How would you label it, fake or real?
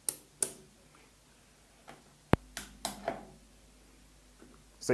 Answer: real